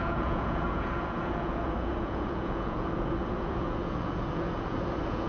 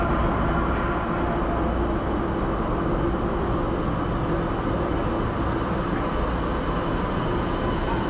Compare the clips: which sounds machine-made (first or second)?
first